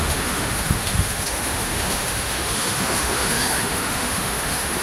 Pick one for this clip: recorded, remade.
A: remade